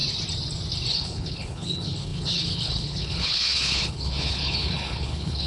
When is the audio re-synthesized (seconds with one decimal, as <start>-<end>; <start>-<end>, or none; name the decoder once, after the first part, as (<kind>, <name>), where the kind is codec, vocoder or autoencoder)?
0.9-5.5 (codec, HILCodec)